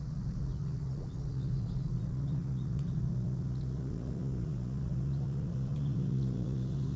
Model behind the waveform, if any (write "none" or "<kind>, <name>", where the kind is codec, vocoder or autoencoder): vocoder, Vocos